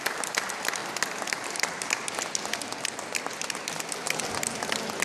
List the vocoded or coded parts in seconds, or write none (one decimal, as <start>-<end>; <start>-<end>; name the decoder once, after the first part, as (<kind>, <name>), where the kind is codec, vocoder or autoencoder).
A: none